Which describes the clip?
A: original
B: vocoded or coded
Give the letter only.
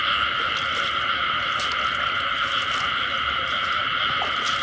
A